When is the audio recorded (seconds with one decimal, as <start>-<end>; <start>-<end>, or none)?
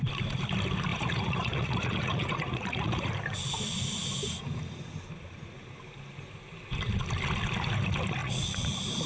0.0-0.9; 3.1-8.2; 8.7-9.1